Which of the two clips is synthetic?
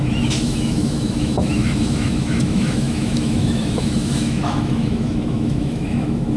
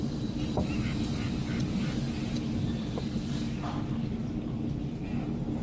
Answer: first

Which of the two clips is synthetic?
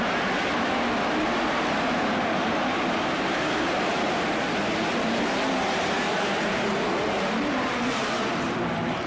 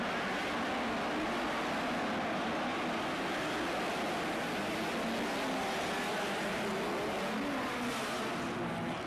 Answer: first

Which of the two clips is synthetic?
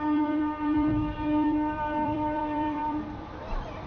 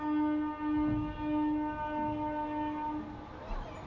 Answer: first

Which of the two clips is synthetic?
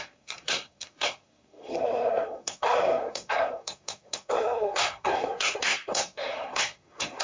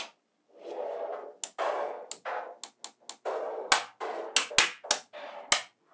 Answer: first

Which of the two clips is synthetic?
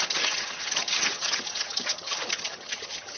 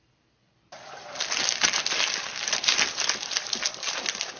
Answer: first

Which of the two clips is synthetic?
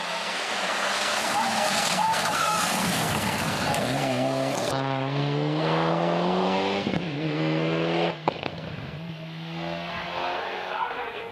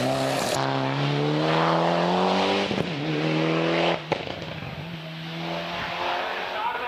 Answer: first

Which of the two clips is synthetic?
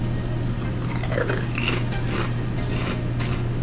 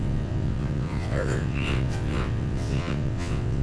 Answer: second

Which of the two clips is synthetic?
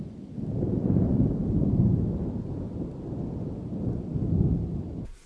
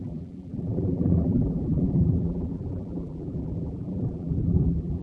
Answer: second